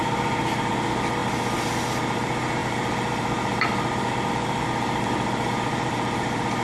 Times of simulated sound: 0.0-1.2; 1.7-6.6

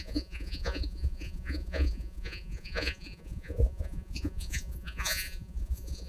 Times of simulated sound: 0.0-6.1

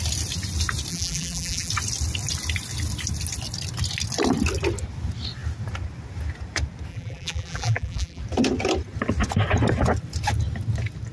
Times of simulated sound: 0.9-1.7; 6.9-8.2